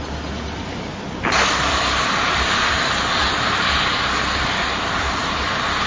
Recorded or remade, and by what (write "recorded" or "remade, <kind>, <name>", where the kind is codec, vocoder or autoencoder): recorded